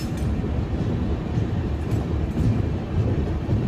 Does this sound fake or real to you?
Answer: fake